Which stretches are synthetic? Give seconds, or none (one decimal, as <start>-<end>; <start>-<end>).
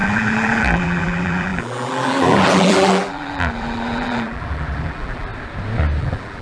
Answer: 0.0-5.3; 6.0-6.4